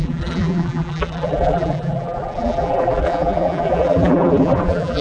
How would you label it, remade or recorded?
remade